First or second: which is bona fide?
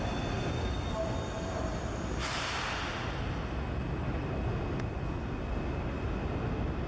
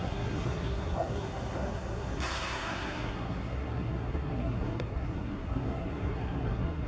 first